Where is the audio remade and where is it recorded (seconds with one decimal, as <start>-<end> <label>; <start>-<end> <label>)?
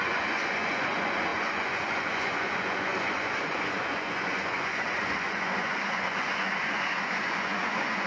0.0-8.1 remade